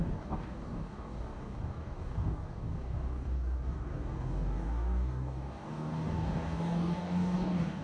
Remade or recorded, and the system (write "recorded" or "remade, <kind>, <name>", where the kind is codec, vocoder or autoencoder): remade, codec, DAC